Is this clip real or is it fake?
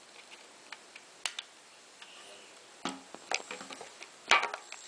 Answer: real